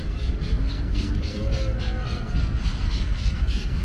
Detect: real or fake fake